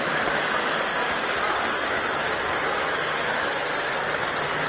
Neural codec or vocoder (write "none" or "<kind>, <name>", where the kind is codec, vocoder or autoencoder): none